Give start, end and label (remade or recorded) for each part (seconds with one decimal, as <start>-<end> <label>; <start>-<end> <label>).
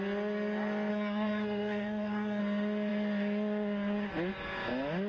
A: 0.0-0.9 recorded; 0.9-2.4 remade; 2.4-5.1 recorded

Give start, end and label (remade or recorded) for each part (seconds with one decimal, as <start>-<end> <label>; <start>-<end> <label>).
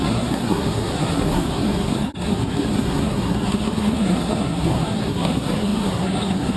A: 0.0-6.6 remade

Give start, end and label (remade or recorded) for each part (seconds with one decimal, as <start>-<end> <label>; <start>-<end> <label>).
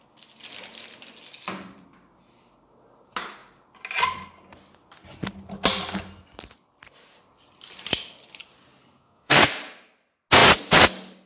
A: 0.0-8.8 recorded; 8.8-9.5 remade; 9.5-11.3 recorded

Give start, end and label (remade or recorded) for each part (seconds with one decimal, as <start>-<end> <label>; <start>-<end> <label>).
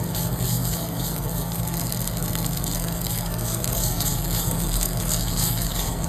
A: 0.0-6.1 remade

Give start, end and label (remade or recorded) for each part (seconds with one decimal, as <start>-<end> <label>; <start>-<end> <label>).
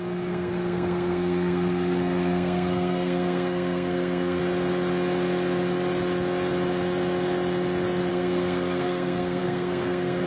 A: 0.0-4.4 remade; 4.4-8.1 recorded; 8.1-10.3 remade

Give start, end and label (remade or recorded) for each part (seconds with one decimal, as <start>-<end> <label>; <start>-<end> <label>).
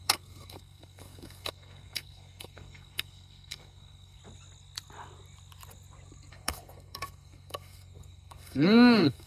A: 0.0-4.2 remade; 4.2-6.3 recorded; 6.3-9.3 remade